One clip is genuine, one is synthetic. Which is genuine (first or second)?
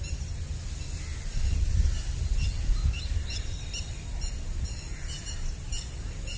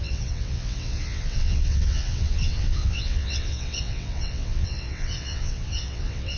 first